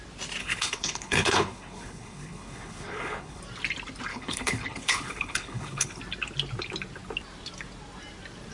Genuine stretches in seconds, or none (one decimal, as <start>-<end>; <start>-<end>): 0.0-0.4; 3.4-4.1; 6.0-8.5